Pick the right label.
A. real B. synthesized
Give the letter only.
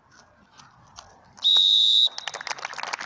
A